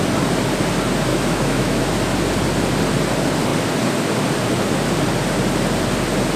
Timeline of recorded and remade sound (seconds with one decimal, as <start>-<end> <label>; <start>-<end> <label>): 0.0-1.1 recorded; 1.1-1.8 remade; 1.8-6.4 recorded